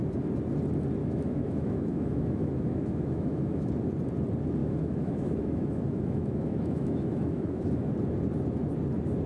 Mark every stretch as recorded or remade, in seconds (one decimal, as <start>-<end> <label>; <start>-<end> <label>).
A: 0.0-1.0 recorded; 1.0-3.7 remade; 3.7-4.6 recorded; 4.6-7.9 remade; 7.9-9.3 recorded